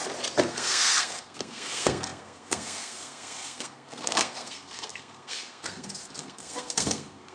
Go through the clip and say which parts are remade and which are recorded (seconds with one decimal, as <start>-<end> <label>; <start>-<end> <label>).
0.0-0.5 recorded; 0.5-7.3 remade

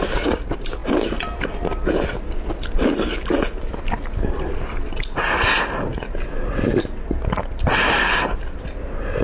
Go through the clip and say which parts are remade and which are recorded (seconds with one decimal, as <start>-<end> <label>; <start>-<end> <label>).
0.0-9.2 recorded

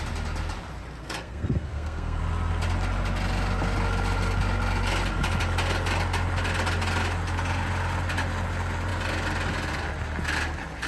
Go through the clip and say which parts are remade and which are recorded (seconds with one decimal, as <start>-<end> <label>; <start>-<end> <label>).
0.0-1.0 recorded; 1.0-2.2 remade; 2.2-10.9 recorded

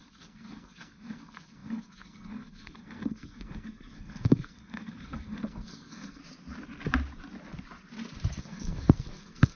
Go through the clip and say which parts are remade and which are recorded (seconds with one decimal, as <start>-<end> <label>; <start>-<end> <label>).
0.0-6.2 remade; 6.2-8.4 recorded; 8.4-9.6 remade

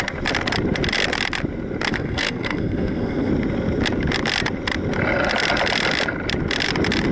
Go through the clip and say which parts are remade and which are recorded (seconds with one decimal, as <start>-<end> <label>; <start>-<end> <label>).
0.0-1.9 recorded; 1.9-3.3 remade; 3.3-7.1 recorded

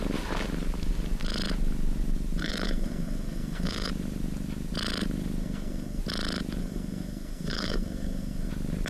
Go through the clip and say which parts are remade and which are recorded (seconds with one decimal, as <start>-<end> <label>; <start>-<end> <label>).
0.0-2.4 recorded; 2.4-3.9 remade; 3.9-5.4 recorded; 5.4-6.0 remade; 6.0-6.6 recorded; 6.6-8.5 remade; 8.5-8.9 recorded

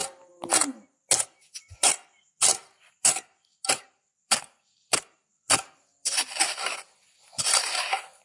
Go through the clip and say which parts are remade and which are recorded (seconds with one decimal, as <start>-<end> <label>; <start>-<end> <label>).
0.0-8.2 recorded

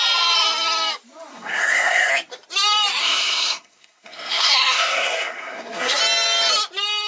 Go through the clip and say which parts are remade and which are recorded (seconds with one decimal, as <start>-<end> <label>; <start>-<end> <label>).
0.0-1.3 recorded; 1.3-2.1 remade; 2.1-3.0 recorded; 3.0-6.0 remade; 6.0-7.1 recorded